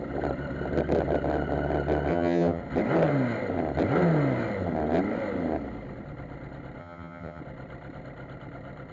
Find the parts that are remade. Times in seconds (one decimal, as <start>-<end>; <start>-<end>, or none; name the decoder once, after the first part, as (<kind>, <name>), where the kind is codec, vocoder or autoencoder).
2.1-2.6 (vocoder, HiFi-GAN); 6.8-7.4